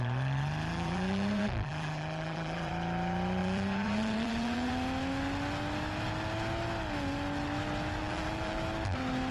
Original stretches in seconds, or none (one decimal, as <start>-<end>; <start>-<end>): 0.0-0.7; 2.7-3.4; 4.7-8.0; 8.6-9.3